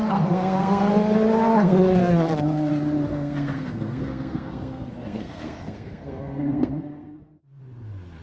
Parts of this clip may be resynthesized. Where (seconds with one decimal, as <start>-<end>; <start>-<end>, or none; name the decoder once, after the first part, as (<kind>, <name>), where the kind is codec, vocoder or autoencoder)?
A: 0.0-0.9 (codec, SNAC); 1.5-2.7; 3.1-7.6